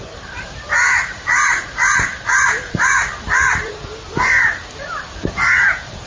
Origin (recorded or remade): remade